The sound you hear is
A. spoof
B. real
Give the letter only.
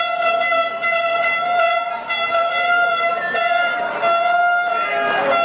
B